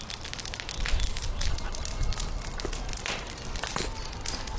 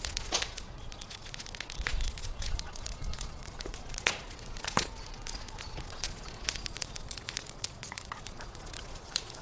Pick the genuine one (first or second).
first